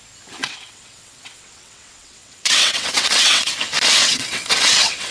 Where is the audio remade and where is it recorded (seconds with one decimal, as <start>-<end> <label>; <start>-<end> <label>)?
0.0-0.4 recorded; 0.4-3.5 remade; 3.5-4.0 recorded; 4.0-5.1 remade